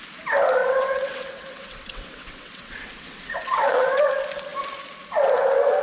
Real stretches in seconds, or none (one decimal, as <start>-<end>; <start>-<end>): 0.0-0.6; 4.1-5.8